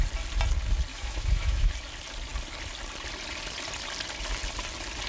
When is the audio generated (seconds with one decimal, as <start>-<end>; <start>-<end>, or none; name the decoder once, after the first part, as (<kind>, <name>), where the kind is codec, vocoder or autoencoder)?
0.9-1.7 (autoencoder, DAC-VAE)